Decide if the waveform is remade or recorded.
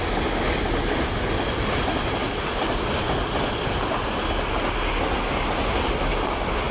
recorded